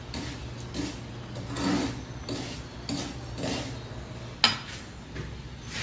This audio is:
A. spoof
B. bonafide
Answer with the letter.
B